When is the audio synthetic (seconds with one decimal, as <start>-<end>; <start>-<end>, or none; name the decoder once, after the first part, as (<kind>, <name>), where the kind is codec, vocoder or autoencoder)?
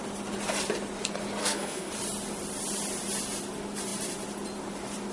1.4-1.9 (codec, SNAC)